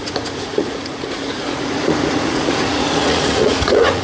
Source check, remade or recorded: remade